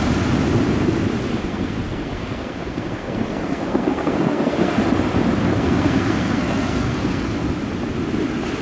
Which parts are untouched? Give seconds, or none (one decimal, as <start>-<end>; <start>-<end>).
0.0-1.4; 4.8-5.4; 7.5-8.6